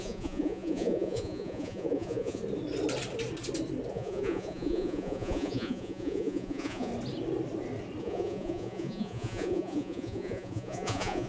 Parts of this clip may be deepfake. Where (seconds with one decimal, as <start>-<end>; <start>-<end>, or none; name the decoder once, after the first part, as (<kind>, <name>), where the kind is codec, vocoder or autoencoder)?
0.0-2.4 (vocoder, Vocos); 3.9-6.9; 8.0-11.3